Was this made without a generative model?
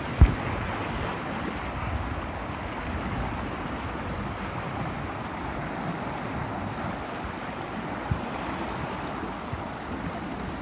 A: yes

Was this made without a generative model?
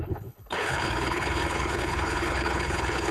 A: no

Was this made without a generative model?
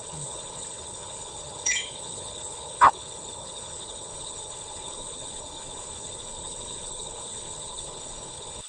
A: no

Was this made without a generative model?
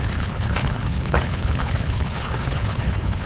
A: no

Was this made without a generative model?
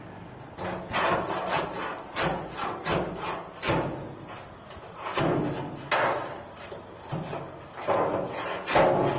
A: yes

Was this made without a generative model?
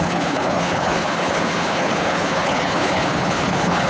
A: no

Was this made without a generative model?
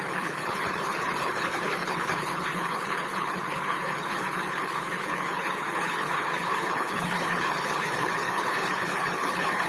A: no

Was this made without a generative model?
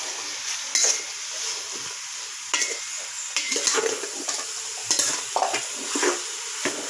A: yes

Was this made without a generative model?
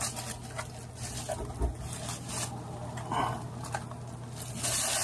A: yes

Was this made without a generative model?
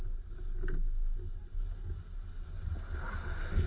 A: yes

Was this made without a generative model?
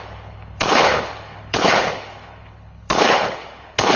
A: no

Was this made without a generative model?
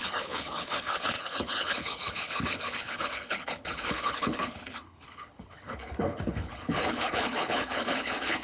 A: no